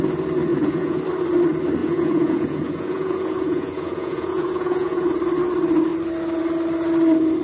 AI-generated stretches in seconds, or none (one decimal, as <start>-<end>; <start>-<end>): 0.5-1.0; 1.8-5.0